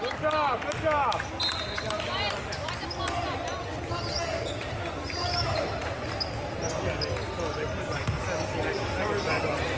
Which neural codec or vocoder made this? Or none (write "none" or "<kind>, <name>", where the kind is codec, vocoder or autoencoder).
none